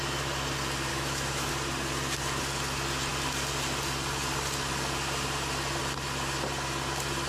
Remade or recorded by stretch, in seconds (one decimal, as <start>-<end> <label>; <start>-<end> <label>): 0.0-0.9 recorded; 0.9-1.5 remade; 1.5-7.3 recorded